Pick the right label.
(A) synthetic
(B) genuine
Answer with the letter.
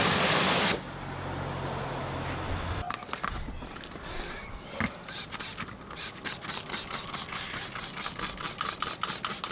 B